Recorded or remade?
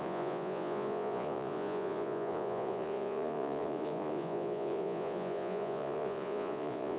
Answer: remade